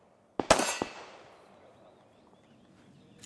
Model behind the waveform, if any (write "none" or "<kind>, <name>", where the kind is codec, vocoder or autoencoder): none